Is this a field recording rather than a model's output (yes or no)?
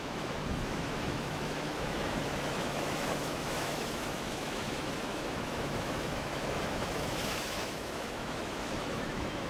no